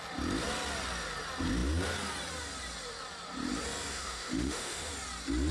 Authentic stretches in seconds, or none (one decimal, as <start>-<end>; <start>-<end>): 0.0-3.9; 4.9-5.5